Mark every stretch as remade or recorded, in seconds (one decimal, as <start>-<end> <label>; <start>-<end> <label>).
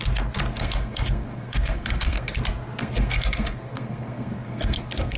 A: 0.0-0.5 recorded; 0.5-2.4 remade; 2.4-2.8 recorded; 2.8-5.2 remade